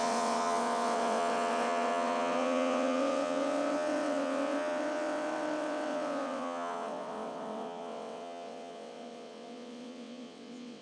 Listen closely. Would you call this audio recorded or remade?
remade